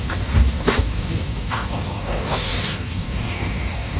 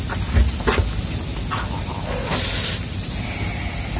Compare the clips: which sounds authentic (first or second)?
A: second